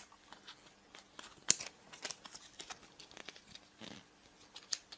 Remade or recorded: recorded